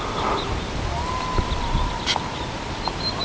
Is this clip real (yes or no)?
yes